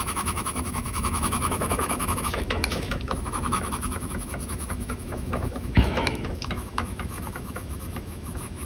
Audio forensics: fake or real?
fake